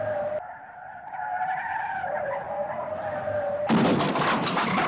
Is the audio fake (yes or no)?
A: no